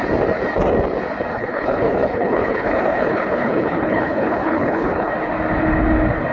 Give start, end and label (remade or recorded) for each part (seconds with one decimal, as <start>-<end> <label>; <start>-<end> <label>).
0.0-1.3 recorded; 1.3-5.1 remade; 5.1-6.3 recorded